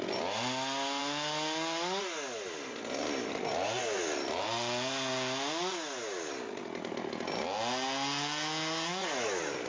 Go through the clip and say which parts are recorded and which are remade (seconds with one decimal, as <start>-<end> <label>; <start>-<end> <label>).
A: 0.0-9.7 recorded

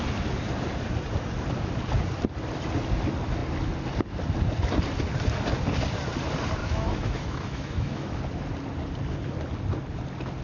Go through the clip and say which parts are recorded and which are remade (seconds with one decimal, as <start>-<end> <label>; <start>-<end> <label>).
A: 0.0-6.6 recorded; 6.6-8.2 remade; 8.2-10.4 recorded

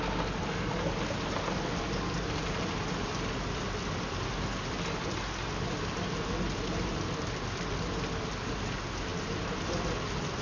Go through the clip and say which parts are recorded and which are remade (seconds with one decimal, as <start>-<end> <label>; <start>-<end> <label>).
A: 0.0-10.4 recorded

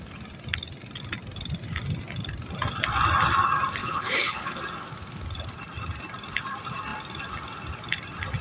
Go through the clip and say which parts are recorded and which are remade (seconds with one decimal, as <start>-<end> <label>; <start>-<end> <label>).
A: 0.0-3.8 recorded; 3.8-4.6 remade; 4.6-8.4 recorded

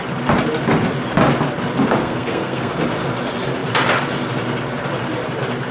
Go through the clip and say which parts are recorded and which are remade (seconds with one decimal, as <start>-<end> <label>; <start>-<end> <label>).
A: 0.0-2.0 recorded; 2.0-2.7 remade; 2.7-5.7 recorded